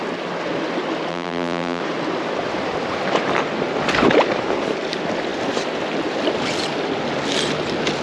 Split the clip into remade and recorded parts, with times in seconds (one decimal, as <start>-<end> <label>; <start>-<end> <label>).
0.0-1.1 recorded; 1.1-1.8 remade; 1.8-8.0 recorded